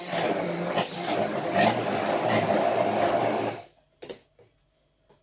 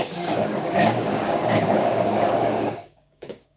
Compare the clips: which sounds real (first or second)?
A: first